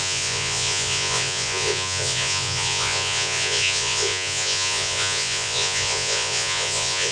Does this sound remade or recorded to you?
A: remade